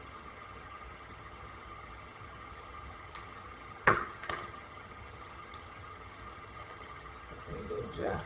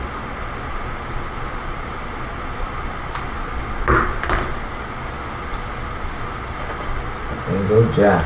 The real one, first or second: second